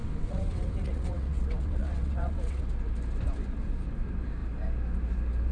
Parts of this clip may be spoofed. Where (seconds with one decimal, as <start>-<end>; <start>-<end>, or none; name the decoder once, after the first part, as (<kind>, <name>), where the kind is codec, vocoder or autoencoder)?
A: 0.0-2.6 (vocoder, WaveNeXt)